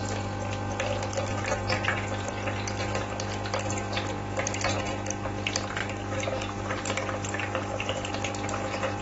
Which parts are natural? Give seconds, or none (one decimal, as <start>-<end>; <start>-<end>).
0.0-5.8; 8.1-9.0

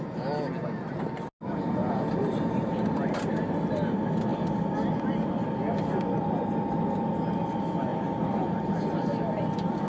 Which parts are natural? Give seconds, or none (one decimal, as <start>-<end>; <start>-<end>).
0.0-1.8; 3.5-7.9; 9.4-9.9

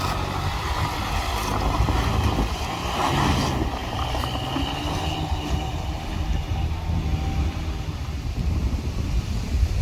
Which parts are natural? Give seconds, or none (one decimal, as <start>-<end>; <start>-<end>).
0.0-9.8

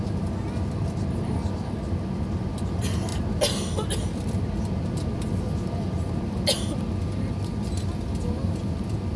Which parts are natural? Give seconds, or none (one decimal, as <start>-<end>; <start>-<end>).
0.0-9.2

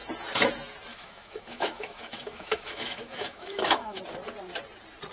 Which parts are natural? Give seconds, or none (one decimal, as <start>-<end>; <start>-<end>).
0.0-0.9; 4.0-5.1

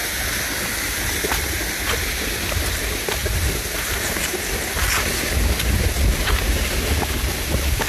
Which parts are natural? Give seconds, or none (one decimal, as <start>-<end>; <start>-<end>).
0.0-2.5; 3.2-7.2

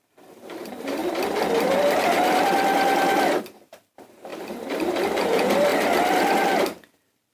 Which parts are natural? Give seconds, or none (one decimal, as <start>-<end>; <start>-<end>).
1.0-3.4; 5.7-7.3